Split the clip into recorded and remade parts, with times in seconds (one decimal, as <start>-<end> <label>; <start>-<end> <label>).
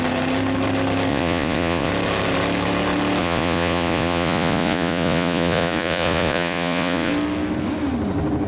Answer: 0.0-1.1 recorded; 1.1-1.9 remade; 1.9-3.2 recorded; 3.2-7.1 remade; 7.1-8.5 recorded